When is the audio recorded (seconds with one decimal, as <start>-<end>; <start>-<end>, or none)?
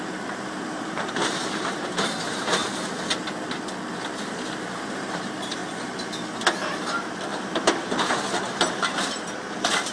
2.6-4.3; 5.6-6.8